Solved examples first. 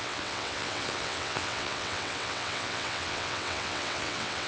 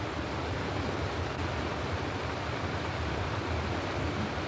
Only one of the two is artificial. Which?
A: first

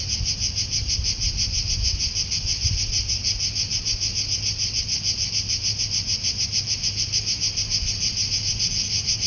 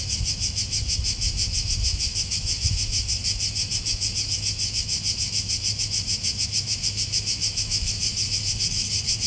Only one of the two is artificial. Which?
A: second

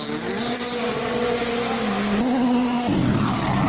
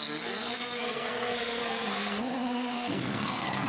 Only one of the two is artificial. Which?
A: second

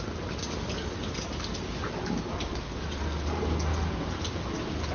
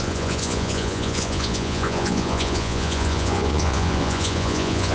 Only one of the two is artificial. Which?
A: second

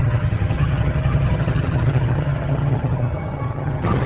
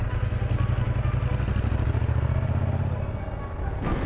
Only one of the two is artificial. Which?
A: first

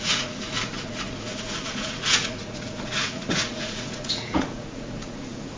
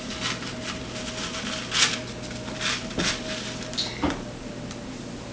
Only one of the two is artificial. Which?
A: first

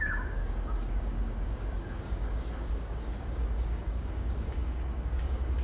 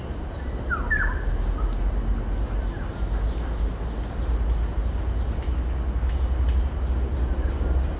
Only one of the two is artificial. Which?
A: first